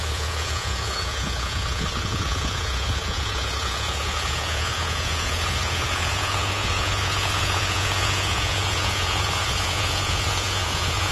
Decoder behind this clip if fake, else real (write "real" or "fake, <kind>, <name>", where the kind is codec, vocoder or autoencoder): fake, vocoder, Vocos